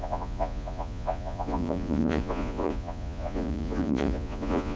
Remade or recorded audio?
remade